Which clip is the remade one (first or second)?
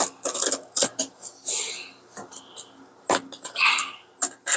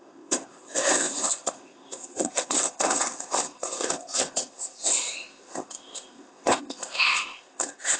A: second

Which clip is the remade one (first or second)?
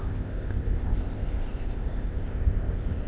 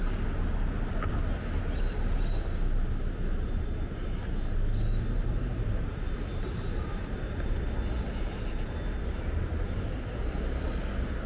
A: first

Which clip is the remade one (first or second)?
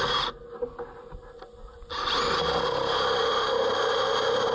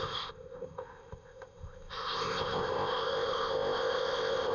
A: second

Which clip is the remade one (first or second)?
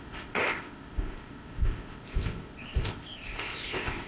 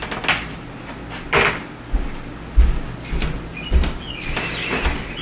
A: first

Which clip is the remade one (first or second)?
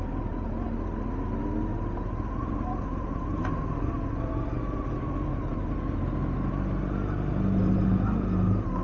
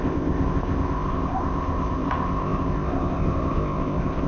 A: second